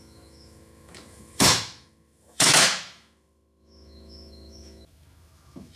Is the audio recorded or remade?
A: remade